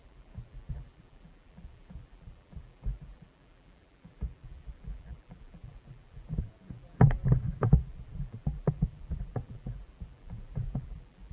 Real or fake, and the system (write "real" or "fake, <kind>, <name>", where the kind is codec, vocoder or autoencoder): fake, vocoder, BigVGAN v2